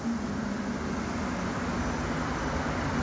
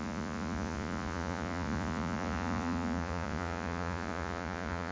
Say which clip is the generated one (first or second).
second